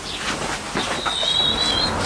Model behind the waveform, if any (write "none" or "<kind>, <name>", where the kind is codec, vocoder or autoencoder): none